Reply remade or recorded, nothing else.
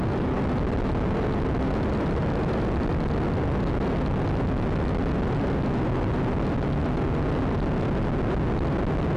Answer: recorded